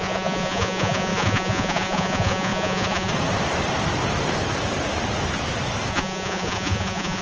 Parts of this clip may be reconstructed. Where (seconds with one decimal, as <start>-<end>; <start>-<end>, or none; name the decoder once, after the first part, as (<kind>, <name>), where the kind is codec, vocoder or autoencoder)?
0.0-3.1 (vocoder, Vocos); 5.9-7.2